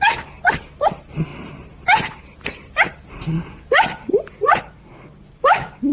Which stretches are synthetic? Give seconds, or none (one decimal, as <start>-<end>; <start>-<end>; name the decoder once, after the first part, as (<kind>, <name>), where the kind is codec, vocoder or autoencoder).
4.3-5.1 (vocoder, Vocos)